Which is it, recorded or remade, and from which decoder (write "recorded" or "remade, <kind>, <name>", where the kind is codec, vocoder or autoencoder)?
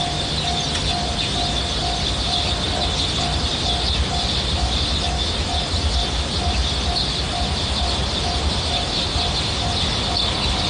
recorded